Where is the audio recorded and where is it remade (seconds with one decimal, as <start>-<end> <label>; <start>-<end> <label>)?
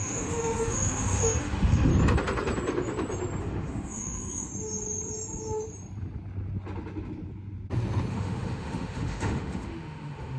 0.0-1.9 remade; 1.9-3.4 recorded; 3.4-4.5 remade; 4.5-8.1 recorded; 8.1-10.4 remade